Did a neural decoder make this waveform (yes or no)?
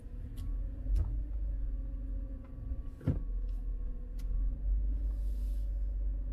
no